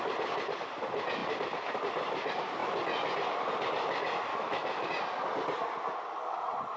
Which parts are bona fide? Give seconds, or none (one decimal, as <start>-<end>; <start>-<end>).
0.0-4.3; 4.9-6.8